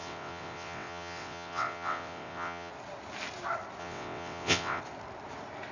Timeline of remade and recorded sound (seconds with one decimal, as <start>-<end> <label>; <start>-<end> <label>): 0.0-2.7 remade; 2.7-3.8 recorded; 3.8-4.8 remade; 4.8-5.7 recorded